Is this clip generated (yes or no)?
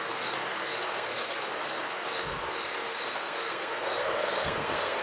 yes